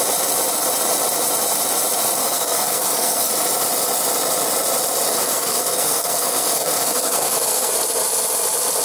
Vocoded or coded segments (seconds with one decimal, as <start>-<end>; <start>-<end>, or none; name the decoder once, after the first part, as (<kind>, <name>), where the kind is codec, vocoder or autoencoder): 2.2-3.3 (codec, SNAC); 5.1-7.7